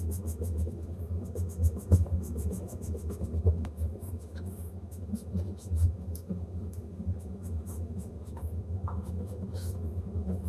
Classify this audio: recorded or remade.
remade